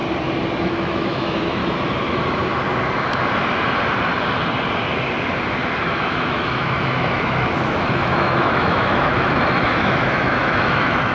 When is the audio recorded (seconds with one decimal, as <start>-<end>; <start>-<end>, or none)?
0.0-0.6; 1.6-5.8

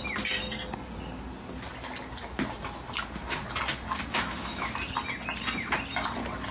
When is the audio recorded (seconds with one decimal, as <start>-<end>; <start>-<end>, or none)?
0.0-4.1; 4.7-6.5

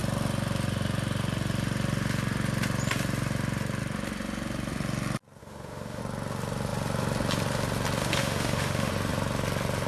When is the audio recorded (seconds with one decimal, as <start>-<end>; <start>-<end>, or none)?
0.0-5.4; 6.0-8.0; 8.9-9.9